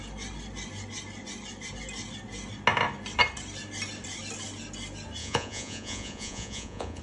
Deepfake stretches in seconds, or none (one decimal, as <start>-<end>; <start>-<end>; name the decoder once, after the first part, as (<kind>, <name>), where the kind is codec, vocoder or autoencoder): 5.2-7.0 (vocoder, Vocos)